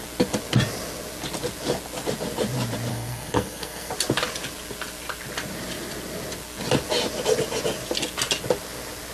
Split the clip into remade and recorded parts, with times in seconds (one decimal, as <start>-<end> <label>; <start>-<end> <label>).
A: 0.0-2.9 recorded; 2.9-3.9 remade; 3.9-9.1 recorded